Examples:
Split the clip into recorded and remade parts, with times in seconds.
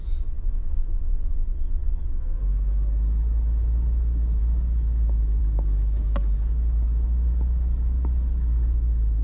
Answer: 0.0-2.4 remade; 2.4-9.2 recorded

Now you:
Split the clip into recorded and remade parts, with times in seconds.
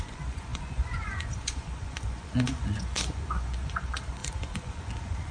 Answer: 0.0-5.3 remade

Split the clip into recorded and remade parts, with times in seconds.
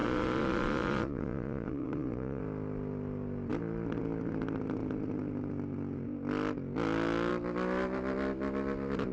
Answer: 0.0-2.4 remade; 2.4-9.1 recorded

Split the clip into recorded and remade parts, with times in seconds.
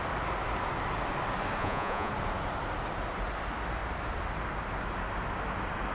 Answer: 0.0-1.6 recorded; 1.6-2.1 remade; 2.1-5.9 recorded